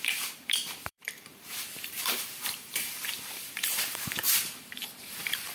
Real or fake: fake